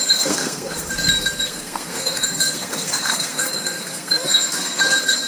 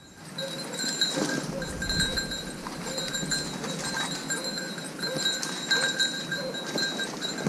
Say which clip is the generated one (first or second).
first